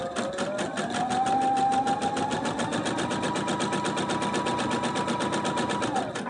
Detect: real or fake real